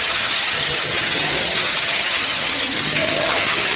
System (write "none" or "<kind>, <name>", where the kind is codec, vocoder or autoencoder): vocoder, HiFi-GAN